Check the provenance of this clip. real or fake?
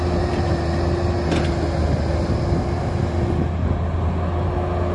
real